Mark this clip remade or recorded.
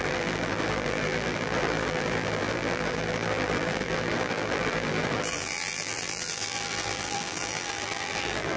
remade